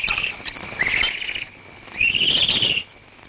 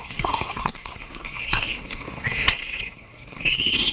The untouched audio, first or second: first